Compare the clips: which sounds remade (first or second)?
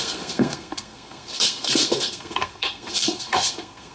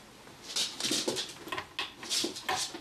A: first